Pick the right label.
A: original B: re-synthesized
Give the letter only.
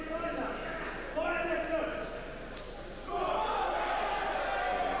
A